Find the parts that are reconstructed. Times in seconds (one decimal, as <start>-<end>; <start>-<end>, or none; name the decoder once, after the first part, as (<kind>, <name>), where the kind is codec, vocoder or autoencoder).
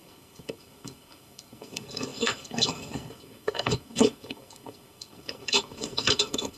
0.0-6.6 (codec, SNAC)